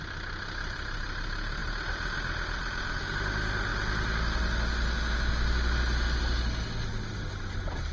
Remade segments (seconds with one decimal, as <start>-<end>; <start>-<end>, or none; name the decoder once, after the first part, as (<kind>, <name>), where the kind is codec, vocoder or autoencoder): none